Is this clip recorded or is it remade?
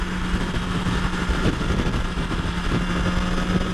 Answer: recorded